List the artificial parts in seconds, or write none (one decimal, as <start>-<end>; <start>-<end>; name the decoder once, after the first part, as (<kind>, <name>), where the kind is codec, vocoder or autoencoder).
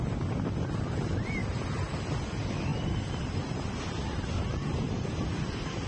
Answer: 1.4-2.0 (vocoder, BigVGAN v2); 2.7-3.8